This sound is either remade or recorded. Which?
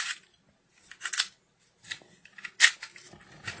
recorded